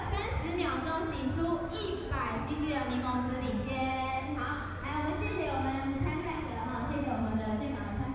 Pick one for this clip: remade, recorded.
recorded